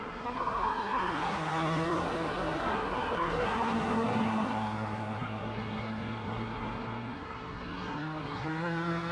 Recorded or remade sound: remade